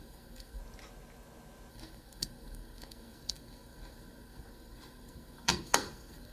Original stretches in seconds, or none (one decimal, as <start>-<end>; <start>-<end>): 0.6-1.7